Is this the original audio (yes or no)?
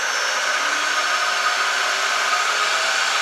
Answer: yes